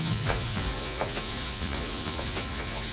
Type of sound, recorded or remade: remade